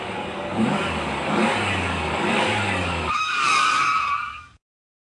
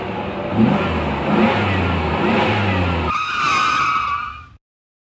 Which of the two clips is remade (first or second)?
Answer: first